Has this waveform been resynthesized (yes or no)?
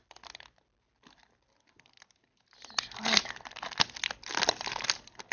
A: no